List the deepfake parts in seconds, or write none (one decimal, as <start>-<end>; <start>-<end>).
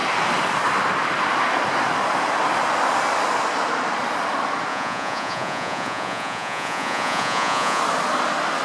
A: 4.7-7.8